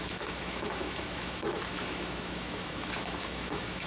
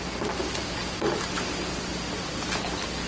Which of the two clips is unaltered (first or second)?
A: second